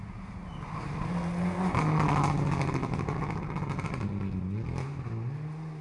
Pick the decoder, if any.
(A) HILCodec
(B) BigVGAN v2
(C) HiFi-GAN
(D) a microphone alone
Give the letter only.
D